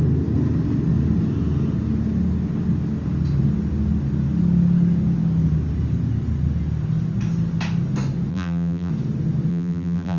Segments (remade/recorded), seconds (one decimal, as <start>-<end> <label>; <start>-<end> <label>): 0.0-8.3 recorded; 8.3-8.9 remade; 8.9-9.5 recorded; 9.5-10.2 remade